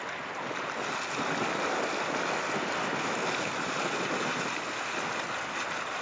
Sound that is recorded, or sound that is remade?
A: recorded